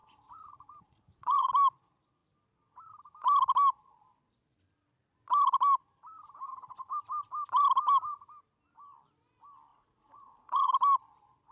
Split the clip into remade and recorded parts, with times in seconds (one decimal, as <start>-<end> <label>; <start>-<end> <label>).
0.0-1.5 remade; 1.5-9.7 recorded; 9.7-10.7 remade; 10.7-11.5 recorded